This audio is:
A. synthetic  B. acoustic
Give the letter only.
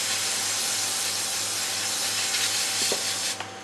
B